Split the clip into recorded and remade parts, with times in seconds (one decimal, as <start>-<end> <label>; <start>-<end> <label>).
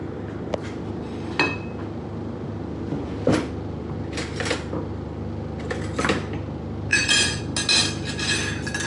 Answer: 0.0-6.9 recorded; 6.9-7.4 remade; 7.4-8.9 recorded